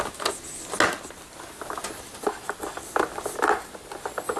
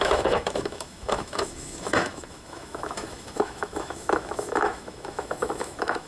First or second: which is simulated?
second